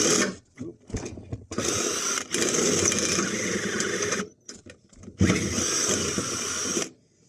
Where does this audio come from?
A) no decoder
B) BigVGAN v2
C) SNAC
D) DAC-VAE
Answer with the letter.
A